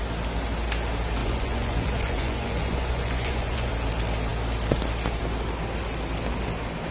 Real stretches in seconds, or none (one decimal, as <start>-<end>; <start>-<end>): 0.0-1.2; 3.7-6.9